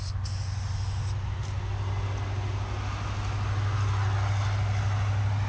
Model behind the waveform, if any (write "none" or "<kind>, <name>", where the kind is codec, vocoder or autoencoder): none